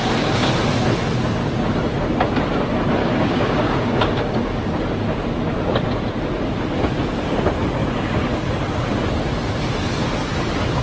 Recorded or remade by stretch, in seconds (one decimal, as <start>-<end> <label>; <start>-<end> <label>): 0.0-0.5 remade; 0.5-3.0 recorded; 3.0-4.8 remade; 4.8-10.8 recorded